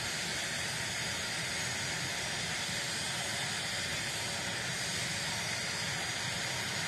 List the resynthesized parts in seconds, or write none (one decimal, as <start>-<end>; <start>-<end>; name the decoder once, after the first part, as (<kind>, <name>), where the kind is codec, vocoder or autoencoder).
3.9-5.1 (vocoder, BigVGAN v2)